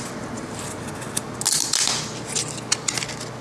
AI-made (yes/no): no